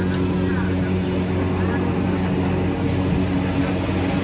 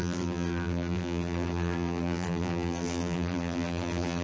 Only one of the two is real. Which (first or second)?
first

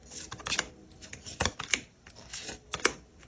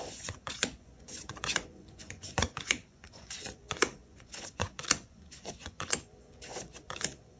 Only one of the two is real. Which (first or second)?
first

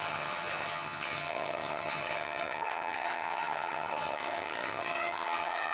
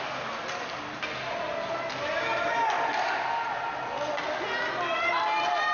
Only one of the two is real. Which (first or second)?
second